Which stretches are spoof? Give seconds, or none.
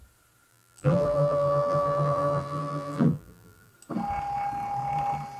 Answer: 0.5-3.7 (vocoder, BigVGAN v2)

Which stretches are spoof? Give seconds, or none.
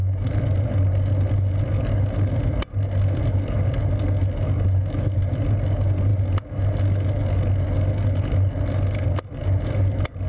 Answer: none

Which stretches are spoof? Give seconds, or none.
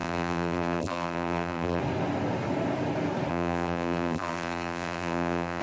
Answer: 0.0-1.8 (vocoder, BigVGAN v2); 3.3-5.6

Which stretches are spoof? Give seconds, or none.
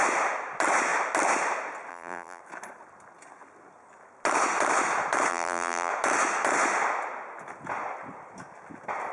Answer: 1.9-2.4 (vocoder, BigVGAN v2); 5.3-5.9